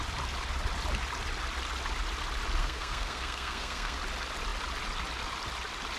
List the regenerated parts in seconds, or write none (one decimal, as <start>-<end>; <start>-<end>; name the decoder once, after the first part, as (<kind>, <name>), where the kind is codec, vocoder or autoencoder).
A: 2.6-4.0 (codec, SNAC)